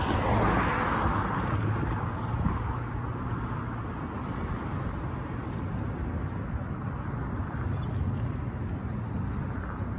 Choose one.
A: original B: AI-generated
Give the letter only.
A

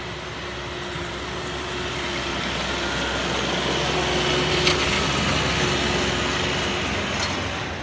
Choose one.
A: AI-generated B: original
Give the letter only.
B